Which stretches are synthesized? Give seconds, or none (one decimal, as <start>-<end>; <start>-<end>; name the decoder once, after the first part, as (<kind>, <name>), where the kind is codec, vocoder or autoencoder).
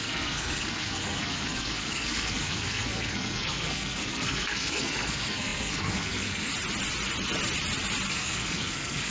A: 0.0-6.5 (codec, SNAC); 8.1-9.1